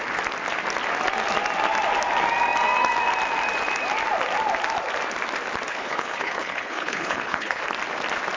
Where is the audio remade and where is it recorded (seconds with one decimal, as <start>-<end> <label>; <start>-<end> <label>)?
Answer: 0.0-5.7 recorded; 5.7-7.6 remade; 7.6-8.4 recorded